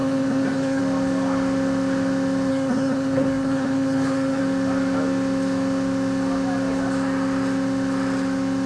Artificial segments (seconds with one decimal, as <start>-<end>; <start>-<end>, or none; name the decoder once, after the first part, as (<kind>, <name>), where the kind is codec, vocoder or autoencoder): 0.0-0.8 (codec, SNAC); 2.5-4.4